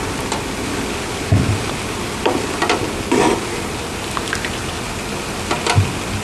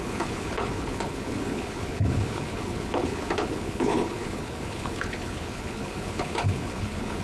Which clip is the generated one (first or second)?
second